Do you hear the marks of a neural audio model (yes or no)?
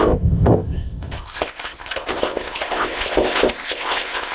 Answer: yes